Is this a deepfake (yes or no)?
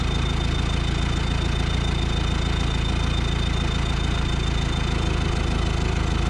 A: no